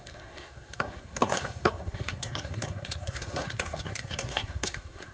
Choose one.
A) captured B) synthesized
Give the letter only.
B